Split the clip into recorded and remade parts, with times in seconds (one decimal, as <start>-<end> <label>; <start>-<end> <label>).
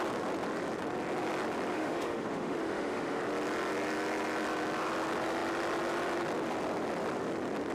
0.0-1.7 recorded; 1.7-3.2 remade; 3.2-7.7 recorded